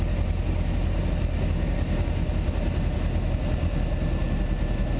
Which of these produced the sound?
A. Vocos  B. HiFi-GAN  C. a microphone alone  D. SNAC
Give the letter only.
C